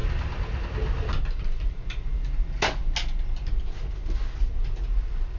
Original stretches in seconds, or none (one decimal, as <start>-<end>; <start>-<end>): 0.0-5.4